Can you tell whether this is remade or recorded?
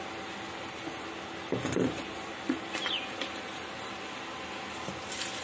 recorded